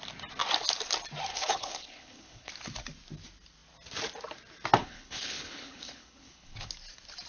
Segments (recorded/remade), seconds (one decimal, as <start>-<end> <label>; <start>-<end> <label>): 0.0-1.3 recorded; 1.3-2.5 remade; 2.5-4.8 recorded; 4.8-6.7 remade; 6.7-7.3 recorded